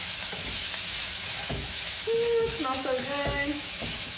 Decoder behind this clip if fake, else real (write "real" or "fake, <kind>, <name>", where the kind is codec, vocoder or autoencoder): fake, autoencoder, DAC-VAE